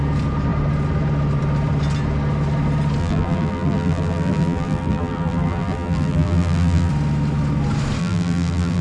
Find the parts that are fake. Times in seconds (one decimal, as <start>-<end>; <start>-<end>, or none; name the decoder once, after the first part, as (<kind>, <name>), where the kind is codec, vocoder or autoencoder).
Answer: 3.0-6.9 (vocoder, BigVGAN v2); 8.0-8.8